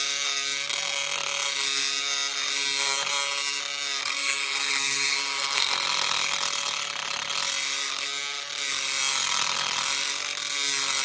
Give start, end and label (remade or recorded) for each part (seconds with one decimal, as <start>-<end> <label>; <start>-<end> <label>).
0.0-4.1 recorded; 4.1-5.7 remade; 5.7-11.0 recorded